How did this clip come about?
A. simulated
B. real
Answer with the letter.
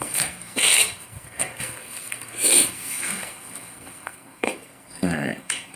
A